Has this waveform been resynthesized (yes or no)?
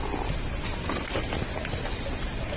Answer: no